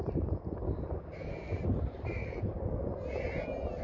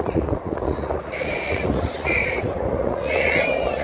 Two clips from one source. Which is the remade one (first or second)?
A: second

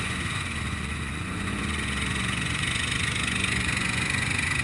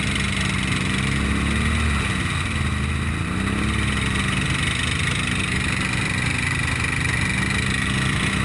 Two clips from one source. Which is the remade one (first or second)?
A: first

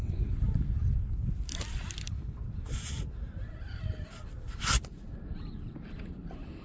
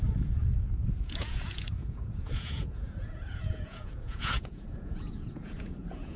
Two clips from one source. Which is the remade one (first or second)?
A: second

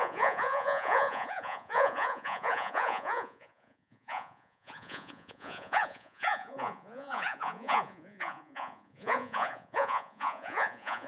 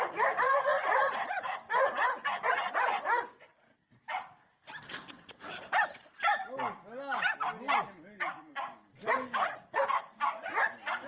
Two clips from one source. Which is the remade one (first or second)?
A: first